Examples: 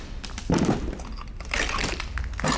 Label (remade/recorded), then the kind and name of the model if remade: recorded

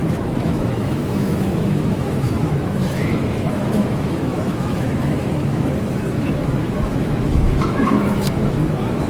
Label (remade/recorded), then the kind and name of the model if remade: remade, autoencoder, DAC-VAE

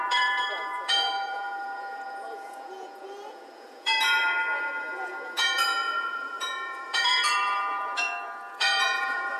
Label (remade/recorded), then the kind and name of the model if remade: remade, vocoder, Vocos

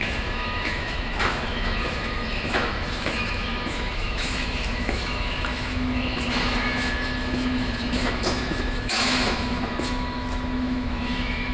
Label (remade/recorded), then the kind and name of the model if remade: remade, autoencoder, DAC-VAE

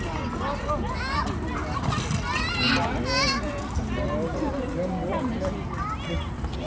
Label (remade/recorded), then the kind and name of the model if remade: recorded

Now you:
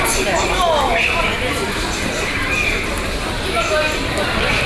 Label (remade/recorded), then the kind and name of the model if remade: recorded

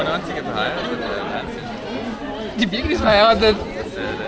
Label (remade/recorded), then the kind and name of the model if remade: recorded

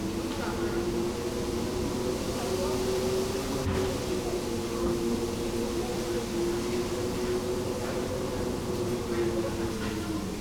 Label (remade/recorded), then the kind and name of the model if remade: recorded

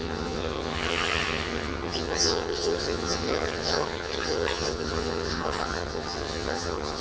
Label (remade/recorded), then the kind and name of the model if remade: remade, vocoder, HiFi-GAN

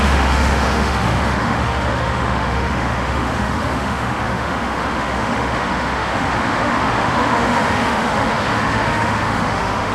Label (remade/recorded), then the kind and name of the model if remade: remade, autoencoder, DAC-VAE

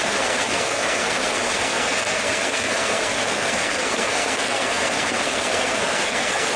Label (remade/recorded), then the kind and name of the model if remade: remade, codec, SNAC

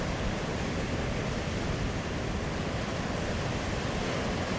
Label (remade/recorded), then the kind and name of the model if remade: recorded